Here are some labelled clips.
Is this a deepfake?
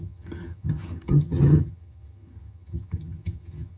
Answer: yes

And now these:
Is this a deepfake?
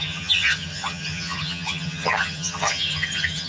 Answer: yes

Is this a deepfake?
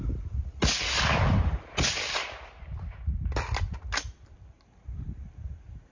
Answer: no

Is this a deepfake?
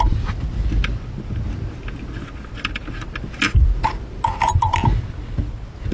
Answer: no